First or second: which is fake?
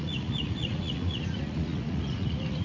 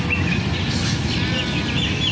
first